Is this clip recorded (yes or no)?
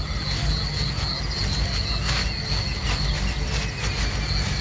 yes